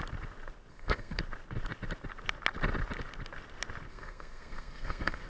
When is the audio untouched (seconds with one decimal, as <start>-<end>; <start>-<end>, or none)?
0.0-0.7; 1.2-3.9